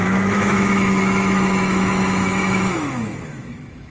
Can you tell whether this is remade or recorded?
remade